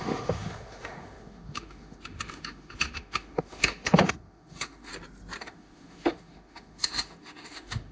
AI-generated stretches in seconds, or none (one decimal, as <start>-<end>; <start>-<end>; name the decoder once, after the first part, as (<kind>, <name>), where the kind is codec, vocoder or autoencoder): 0.0-4.9 (autoencoder, DAC-VAE); 5.4-7.9